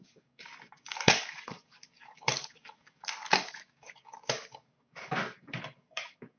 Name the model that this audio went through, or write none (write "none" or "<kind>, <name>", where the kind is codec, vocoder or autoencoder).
codec, DAC